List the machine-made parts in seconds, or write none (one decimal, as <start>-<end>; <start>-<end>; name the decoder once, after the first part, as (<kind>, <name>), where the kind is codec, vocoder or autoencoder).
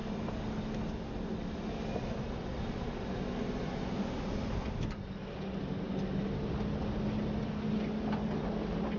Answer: none